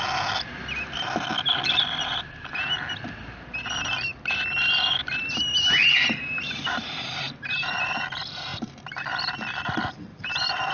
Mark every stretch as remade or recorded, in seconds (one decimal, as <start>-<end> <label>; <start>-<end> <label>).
0.0-10.1 recorded; 10.1-10.7 remade